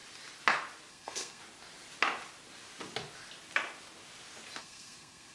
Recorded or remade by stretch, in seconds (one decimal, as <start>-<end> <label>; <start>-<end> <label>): 0.0-0.9 recorded; 0.9-1.4 remade; 1.4-4.6 recorded; 4.6-5.3 remade